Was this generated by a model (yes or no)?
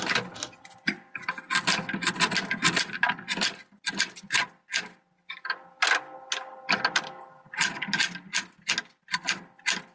no